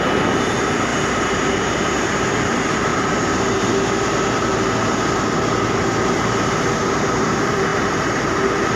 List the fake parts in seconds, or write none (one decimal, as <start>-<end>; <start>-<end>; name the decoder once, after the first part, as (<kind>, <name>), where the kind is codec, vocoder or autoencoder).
0.0-2.9 (vocoder, BigVGAN v2); 7.3-8.8